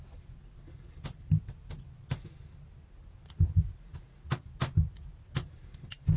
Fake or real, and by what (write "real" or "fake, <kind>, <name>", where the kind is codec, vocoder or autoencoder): real